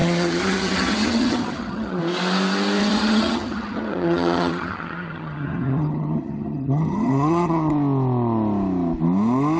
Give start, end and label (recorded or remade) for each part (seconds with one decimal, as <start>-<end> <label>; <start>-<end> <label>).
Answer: 0.0-2.0 remade; 2.0-2.8 recorded; 2.8-7.7 remade; 7.7-9.6 recorded